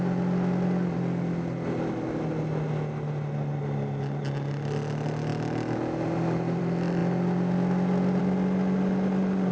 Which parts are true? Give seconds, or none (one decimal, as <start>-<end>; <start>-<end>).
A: 0.0-9.5